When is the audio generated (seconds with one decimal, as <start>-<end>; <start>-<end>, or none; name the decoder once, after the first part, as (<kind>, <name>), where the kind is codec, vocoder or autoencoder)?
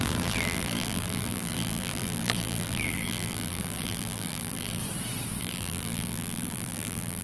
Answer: 0.0-4.8 (vocoder, BigVGAN v2); 5.4-7.2